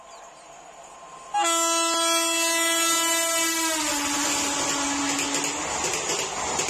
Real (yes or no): yes